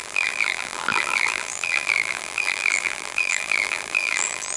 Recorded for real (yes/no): no